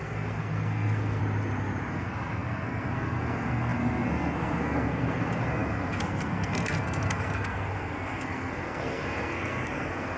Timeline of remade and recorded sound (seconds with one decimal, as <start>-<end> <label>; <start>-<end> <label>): 0.0-1.2 remade; 1.2-1.9 recorded; 1.9-10.2 remade